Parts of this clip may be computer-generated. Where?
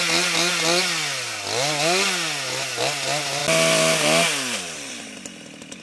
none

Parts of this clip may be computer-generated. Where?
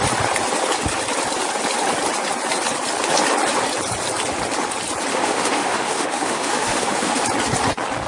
5.1-7.2 (autoencoder, DAC-VAE)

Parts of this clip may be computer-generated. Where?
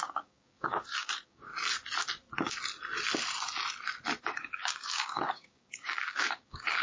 0.0-1.5 (codec, DAC); 4.2-6.8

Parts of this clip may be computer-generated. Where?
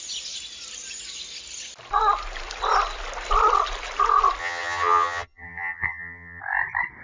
4.4-6.4 (vocoder, HiFi-GAN)